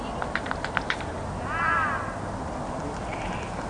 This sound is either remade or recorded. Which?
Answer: recorded